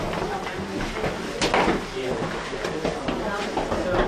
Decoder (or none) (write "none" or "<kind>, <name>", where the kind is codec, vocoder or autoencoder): none